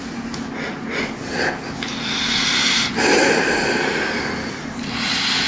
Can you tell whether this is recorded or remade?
recorded